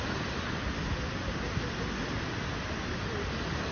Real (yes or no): yes